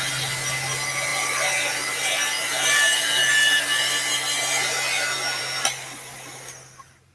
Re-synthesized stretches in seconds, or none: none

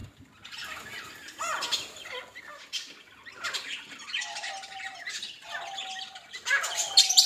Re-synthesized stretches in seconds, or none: 0.0-1.4 (vocoder, BigVGAN v2); 2.5-4.5

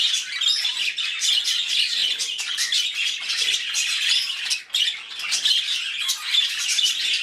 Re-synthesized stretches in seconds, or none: none

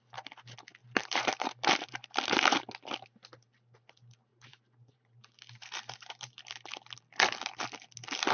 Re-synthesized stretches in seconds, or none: 0.8-2.6 (vocoder, BigVGAN v2); 4.3-6.4

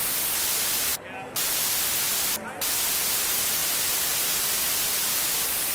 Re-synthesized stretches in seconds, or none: none

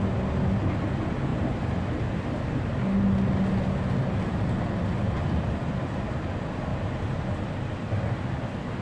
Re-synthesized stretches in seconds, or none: 1.3-2.8 (vocoder, BigVGAN v2); 6.7-7.2